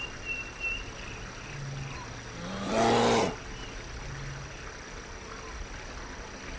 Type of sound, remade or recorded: recorded